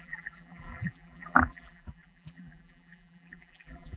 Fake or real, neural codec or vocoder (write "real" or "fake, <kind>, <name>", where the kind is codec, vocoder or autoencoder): fake, vocoder, BigVGAN v2